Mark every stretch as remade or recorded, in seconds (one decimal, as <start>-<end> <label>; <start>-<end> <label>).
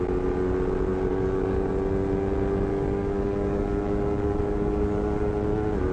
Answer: 0.0-1.1 recorded; 1.1-1.7 remade; 1.7-2.7 recorded; 2.7-5.3 remade; 5.3-5.9 recorded